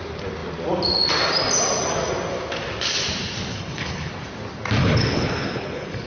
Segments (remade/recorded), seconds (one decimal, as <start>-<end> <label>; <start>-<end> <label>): 0.0-3.5 recorded; 3.5-4.1 remade; 4.1-4.8 recorded; 4.8-6.1 remade